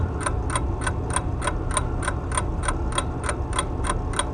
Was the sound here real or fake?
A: real